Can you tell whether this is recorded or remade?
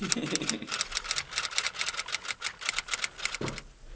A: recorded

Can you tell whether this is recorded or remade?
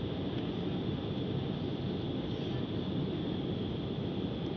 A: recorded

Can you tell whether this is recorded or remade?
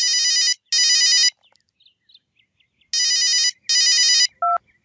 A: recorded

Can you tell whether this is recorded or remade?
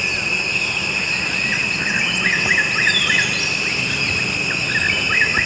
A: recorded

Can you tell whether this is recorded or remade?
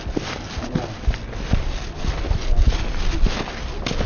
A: recorded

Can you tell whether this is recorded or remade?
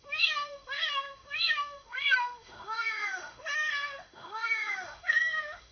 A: remade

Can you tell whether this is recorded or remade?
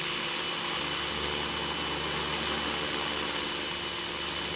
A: recorded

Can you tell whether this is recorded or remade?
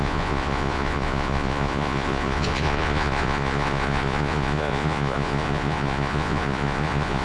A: remade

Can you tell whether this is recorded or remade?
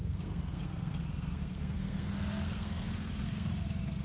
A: remade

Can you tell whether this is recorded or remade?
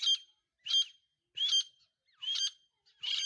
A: recorded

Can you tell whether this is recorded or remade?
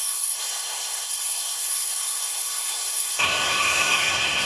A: remade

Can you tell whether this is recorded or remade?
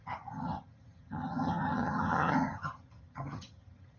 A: remade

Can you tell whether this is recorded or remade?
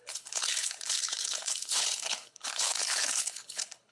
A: remade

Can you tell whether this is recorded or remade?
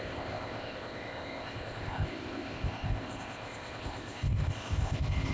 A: remade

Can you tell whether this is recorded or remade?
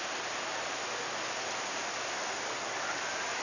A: recorded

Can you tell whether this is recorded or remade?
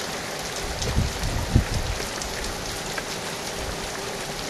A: recorded